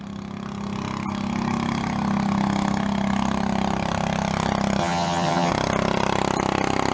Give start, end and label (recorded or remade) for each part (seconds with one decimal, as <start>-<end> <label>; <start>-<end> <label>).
0.0-4.8 recorded; 4.8-5.5 remade; 5.5-6.9 recorded